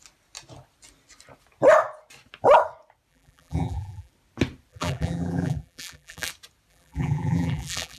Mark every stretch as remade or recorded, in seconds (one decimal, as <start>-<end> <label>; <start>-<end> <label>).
0.0-3.1 recorded; 3.1-4.1 remade; 4.1-4.7 recorded; 4.7-6.3 remade; 6.3-6.7 recorded; 6.7-8.0 remade